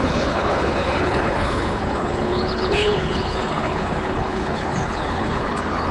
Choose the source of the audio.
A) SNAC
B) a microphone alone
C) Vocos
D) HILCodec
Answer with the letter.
D